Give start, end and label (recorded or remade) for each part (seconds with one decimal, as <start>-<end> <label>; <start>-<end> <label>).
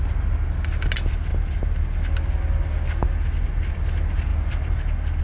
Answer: 0.0-5.2 recorded